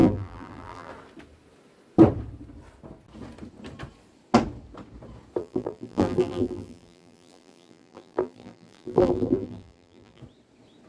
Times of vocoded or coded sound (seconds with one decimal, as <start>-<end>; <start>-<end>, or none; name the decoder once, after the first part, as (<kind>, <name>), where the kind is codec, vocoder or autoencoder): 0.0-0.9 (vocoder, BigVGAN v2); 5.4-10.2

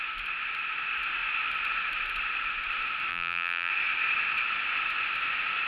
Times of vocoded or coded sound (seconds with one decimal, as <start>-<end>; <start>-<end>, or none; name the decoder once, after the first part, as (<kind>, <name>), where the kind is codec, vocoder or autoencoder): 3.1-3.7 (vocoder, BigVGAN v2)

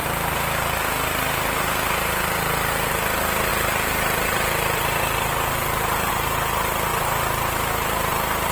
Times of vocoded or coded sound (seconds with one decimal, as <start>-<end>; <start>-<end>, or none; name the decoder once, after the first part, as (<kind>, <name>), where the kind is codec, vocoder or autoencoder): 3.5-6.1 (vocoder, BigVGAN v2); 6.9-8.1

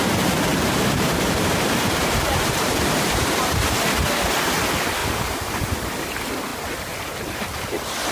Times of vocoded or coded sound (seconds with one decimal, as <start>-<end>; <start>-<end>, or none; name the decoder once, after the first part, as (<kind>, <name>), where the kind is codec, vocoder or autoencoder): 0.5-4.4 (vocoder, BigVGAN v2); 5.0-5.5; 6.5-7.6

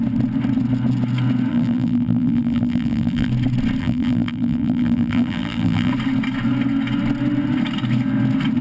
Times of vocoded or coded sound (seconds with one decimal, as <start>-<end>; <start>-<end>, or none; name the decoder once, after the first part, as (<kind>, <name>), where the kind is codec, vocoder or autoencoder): 1.5-3.3 (vocoder, BigVGAN v2); 3.8-5.9

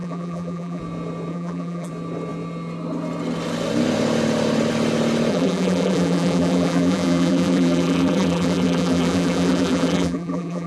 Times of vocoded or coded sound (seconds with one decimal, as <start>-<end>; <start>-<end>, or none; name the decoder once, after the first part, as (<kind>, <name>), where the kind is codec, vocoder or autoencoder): 0.0-0.8 (vocoder, BigVGAN v2); 1.3-1.9; 5.3-10.7

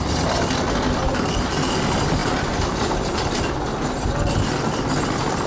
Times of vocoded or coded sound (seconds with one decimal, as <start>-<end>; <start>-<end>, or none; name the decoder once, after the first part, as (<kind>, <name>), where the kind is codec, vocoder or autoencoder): 2.2-3.4 (vocoder, BigVGAN v2)